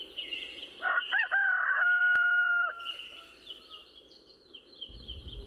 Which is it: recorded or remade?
remade